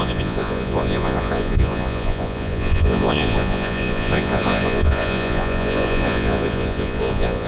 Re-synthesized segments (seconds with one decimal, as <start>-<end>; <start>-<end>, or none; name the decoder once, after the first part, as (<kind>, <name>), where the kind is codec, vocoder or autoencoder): 0.0-7.5 (vocoder, Vocos)